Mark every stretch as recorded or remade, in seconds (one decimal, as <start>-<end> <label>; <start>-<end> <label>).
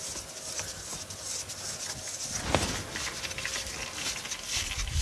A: 0.0-5.0 recorded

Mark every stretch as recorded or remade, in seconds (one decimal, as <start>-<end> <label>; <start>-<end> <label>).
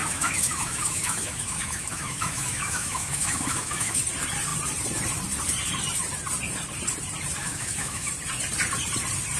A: 0.0-4.0 remade; 4.0-7.4 recorded; 7.4-8.1 remade; 8.1-9.4 recorded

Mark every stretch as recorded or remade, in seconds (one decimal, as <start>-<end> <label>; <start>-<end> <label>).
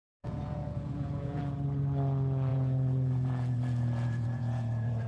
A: 0.0-1.4 remade; 1.4-2.5 recorded; 2.5-5.1 remade